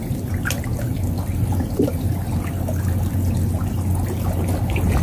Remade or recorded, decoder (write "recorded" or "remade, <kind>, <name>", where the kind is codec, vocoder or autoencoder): recorded